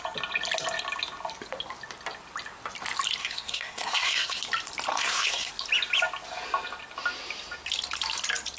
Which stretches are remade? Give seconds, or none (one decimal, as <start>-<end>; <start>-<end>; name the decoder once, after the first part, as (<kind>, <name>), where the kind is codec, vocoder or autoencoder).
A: 3.2-4.4 (codec, SNAC); 4.9-5.5